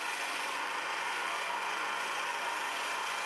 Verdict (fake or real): fake